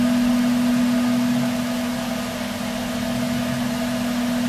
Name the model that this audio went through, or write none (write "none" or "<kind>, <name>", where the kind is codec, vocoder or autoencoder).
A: none